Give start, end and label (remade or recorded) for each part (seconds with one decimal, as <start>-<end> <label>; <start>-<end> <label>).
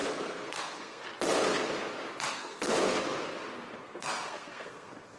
0.0-1.0 remade; 1.0-2.3 recorded; 2.3-2.7 remade; 2.7-3.8 recorded; 3.8-5.2 remade